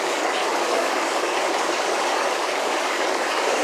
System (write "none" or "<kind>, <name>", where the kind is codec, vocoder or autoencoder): codec, DAC